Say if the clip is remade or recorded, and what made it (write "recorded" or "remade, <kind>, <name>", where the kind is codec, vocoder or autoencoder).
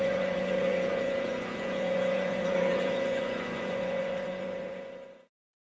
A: remade, vocoder, Vocos